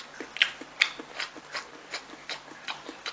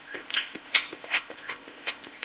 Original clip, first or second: first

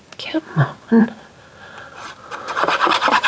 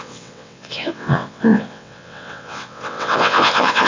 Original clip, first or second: first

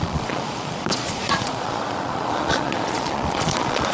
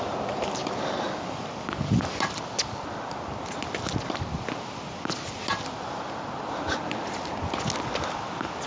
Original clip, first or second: second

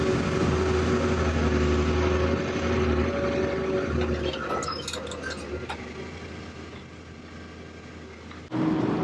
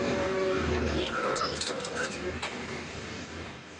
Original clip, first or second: first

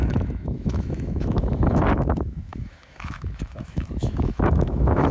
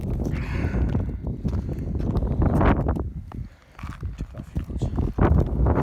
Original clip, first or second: second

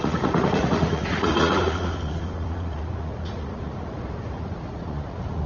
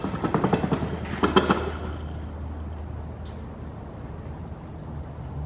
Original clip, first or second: second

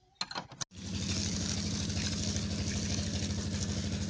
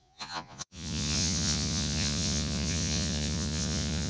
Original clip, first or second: first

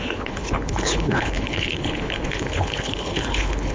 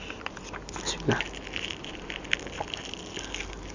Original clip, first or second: second